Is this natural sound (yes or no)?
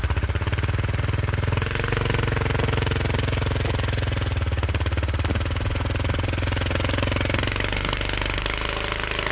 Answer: yes